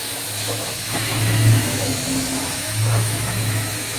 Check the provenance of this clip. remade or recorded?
remade